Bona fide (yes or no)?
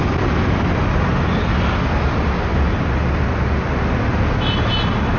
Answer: yes